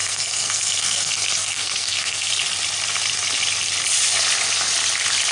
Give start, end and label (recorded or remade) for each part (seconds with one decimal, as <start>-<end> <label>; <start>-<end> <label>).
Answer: 0.0-2.3 remade; 2.3-5.3 recorded